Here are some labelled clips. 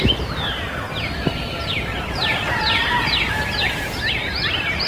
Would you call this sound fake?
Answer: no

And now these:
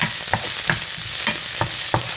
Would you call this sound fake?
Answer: no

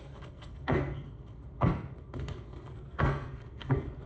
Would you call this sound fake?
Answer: yes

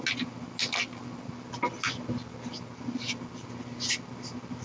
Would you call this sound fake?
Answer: no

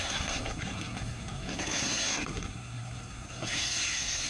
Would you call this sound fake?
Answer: yes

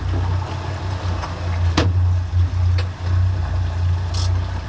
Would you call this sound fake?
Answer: no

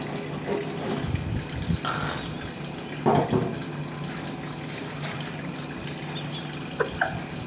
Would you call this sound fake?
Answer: no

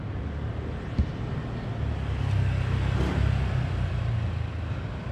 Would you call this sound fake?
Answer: no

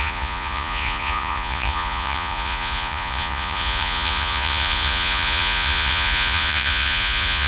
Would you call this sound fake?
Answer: yes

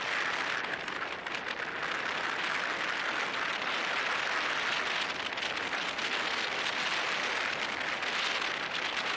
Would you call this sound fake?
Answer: no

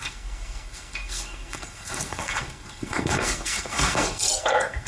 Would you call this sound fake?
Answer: yes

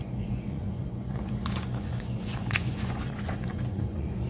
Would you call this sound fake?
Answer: yes